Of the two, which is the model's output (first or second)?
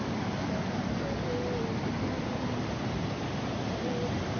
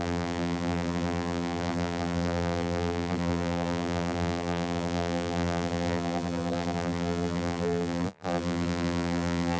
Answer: second